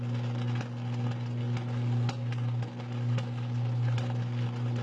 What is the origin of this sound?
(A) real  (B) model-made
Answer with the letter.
A